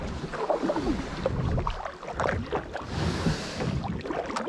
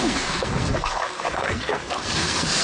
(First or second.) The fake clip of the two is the second